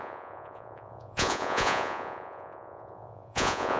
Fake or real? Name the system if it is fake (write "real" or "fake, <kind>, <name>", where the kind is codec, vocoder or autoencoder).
fake, vocoder, Vocos